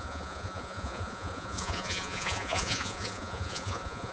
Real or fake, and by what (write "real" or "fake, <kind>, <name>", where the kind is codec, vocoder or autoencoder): fake, vocoder, Vocos